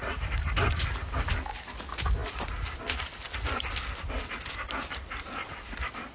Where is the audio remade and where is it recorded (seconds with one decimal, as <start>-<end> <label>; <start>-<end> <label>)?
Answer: 0.0-6.1 recorded